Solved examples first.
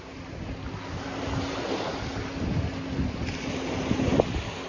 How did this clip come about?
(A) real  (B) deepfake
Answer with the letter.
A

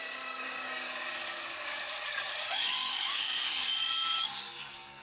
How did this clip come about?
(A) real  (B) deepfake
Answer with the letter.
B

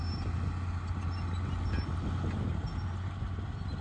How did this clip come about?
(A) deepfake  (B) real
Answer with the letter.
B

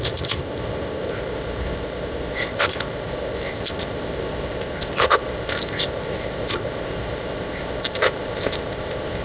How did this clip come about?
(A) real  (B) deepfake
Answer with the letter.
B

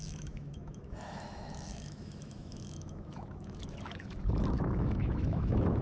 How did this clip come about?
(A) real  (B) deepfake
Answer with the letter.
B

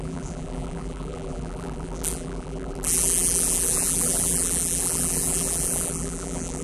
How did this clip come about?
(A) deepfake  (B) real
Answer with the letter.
A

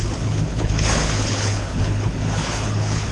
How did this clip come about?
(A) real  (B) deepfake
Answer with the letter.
B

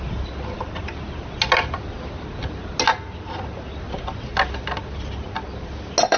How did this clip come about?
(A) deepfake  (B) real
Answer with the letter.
B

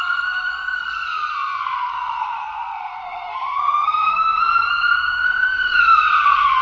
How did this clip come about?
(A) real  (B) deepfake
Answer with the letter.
B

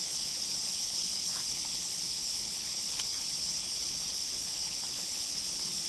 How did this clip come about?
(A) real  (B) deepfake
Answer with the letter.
B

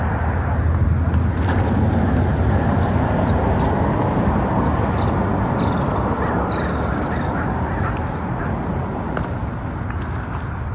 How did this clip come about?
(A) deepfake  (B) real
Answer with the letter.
B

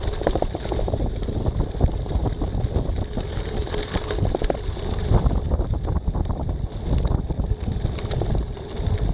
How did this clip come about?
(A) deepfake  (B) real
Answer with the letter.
B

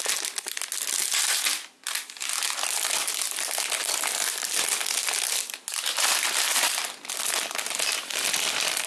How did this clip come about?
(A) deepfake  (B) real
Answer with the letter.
B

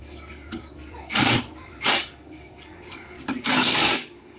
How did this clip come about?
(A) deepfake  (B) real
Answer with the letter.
A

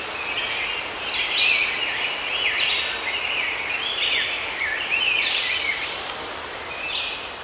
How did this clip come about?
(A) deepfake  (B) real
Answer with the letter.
B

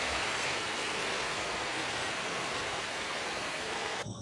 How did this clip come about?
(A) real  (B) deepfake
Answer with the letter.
B